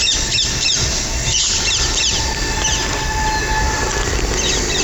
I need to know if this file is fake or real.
real